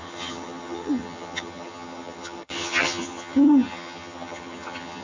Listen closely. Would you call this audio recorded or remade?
remade